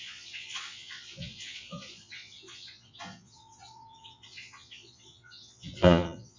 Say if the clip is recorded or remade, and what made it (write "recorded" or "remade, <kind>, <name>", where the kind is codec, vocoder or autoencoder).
remade, vocoder, Vocos